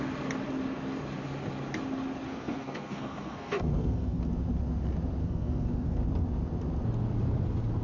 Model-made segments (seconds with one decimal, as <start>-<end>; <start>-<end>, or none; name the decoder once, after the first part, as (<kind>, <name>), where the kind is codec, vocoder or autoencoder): 2.3-4.2 (codec, SNAC); 5.2-6.0